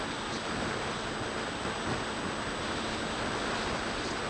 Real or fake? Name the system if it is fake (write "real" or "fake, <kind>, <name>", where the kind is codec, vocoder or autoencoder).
real